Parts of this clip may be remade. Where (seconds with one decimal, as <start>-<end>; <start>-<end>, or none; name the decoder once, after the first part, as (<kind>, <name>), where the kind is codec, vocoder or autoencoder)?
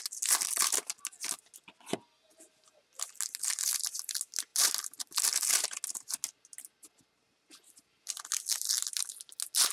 none